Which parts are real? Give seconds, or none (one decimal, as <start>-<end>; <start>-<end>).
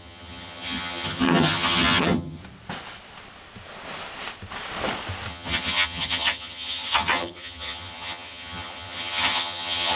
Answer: 2.4-5.3